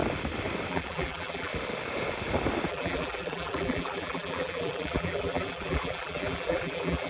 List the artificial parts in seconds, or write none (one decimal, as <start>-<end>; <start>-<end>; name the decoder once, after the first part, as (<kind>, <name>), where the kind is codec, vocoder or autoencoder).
0.7-1.5 (vocoder, BigVGAN v2); 2.7-7.1